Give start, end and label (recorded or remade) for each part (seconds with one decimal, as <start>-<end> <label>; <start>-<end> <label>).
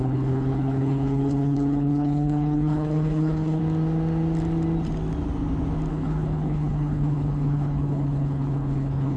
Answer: 0.0-3.6 remade; 3.6-5.9 recorded; 5.9-9.2 remade